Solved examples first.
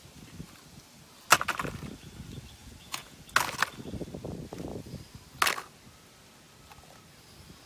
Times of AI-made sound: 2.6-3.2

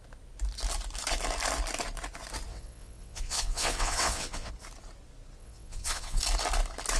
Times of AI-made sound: 2.5-4.5; 5.4-6.2

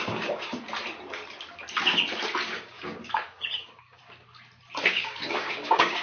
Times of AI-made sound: 0.0-0.7; 2.5-4.0; 4.9-6.0

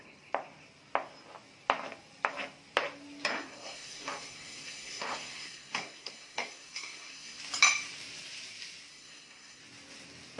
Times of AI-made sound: 3.3-7.4; 8.9-9.6